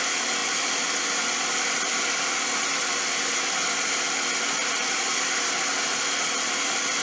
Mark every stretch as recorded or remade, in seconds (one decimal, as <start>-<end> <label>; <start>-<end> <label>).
0.0-7.0 recorded